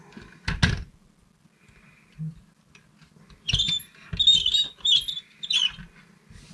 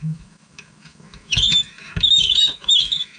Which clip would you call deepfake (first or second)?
second